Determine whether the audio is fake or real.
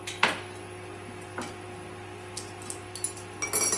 real